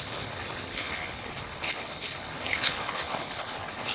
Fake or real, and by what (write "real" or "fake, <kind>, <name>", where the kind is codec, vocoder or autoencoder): fake, codec, HILCodec